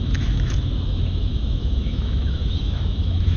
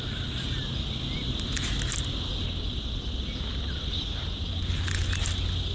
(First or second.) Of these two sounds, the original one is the second